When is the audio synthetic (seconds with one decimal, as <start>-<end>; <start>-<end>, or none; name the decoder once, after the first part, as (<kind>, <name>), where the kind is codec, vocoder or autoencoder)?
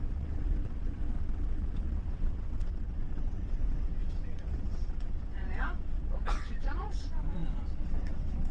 0.0-8.5 (vocoder, WaveNeXt)